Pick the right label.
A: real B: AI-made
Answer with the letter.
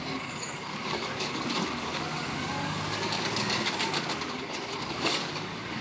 B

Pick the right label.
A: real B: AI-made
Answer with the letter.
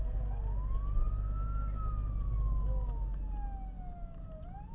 A